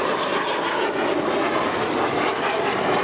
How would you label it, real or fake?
real